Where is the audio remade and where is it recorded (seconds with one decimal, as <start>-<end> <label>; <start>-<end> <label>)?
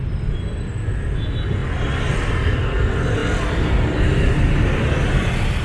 0.0-5.6 recorded